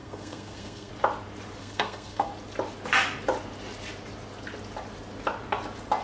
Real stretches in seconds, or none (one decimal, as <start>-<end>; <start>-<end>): 0.9-1.6; 2.3-6.0